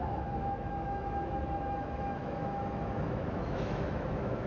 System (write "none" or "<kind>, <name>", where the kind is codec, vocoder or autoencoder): autoencoder, DAC-VAE